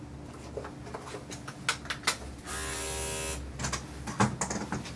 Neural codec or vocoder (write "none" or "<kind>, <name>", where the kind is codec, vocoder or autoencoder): none